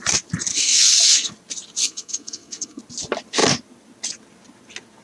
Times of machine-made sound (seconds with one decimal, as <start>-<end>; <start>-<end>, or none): 0.5-1.3; 1.8-2.8